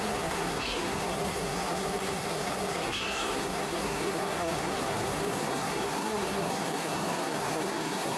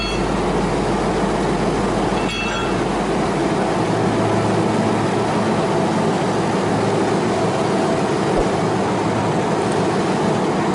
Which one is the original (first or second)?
second